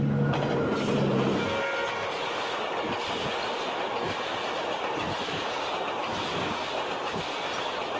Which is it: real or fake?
real